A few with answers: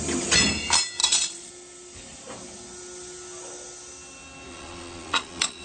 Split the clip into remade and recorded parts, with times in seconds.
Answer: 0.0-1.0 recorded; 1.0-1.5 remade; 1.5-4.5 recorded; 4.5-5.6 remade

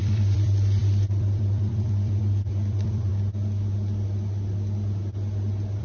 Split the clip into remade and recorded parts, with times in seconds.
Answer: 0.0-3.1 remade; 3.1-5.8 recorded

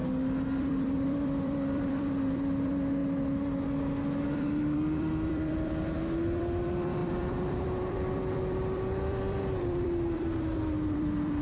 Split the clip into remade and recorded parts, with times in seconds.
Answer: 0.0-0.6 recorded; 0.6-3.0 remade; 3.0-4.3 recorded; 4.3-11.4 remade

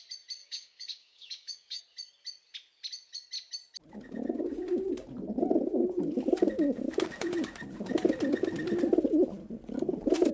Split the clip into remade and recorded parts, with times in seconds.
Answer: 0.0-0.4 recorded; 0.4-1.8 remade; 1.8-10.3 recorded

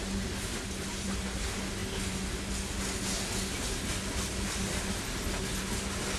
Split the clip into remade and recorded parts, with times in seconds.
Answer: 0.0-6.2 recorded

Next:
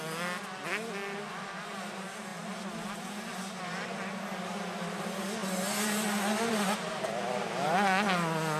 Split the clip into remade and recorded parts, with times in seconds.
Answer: 0.0-8.6 recorded

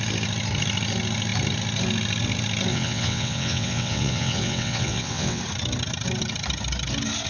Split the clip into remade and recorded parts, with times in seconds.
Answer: 0.0-2.7 recorded; 2.7-5.4 remade; 5.4-7.3 recorded